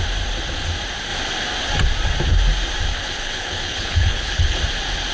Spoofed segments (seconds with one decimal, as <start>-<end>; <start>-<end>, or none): 2.9-4.6